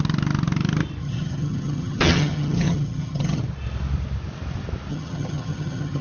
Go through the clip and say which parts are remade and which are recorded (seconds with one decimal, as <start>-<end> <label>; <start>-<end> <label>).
0.0-1.0 recorded; 1.0-3.4 remade; 3.4-4.9 recorded; 4.9-6.0 remade